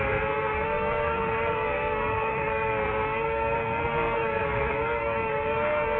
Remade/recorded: remade